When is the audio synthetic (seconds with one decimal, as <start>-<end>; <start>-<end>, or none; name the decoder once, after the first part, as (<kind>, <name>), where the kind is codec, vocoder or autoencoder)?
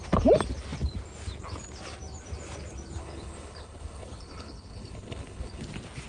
3.0-5.6 (codec, HILCodec)